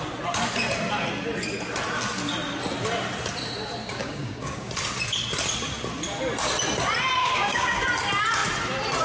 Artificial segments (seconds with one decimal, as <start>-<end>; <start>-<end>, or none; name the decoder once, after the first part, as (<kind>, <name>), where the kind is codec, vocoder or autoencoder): 4.0-4.7 (codec, DAC); 7.2-7.8